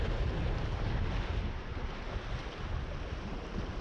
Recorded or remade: recorded